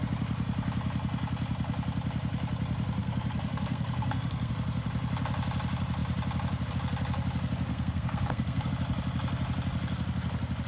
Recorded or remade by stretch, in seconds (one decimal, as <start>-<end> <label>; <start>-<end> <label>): 0.0-3.0 recorded; 3.0-4.5 remade; 4.5-7.7 recorded; 7.7-8.7 remade; 8.7-10.7 recorded